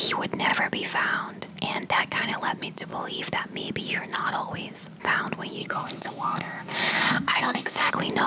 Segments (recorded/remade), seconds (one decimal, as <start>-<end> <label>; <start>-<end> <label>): 0.0-5.6 recorded; 5.6-7.9 remade; 7.9-8.3 recorded